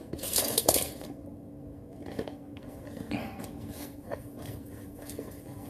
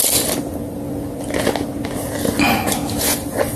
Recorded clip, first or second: second